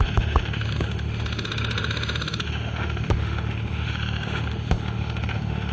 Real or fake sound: fake